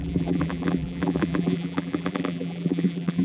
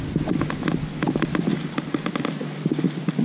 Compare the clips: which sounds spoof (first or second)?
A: first